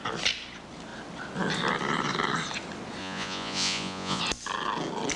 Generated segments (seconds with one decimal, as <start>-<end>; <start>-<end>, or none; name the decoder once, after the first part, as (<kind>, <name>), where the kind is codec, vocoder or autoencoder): 3.0-4.2 (vocoder, Vocos)